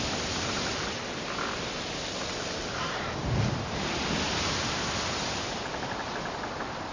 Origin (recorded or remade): recorded